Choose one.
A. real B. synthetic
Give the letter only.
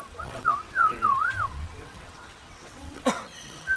B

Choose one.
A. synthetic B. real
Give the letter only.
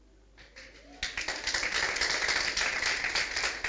B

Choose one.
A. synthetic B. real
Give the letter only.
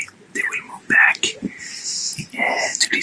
B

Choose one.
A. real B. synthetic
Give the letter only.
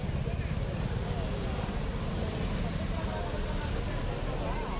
A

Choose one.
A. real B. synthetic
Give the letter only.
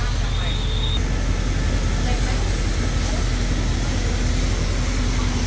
A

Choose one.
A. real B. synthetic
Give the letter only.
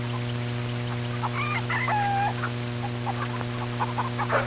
A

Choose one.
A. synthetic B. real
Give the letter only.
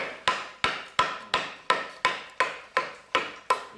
B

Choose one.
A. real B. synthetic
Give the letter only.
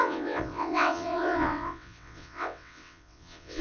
B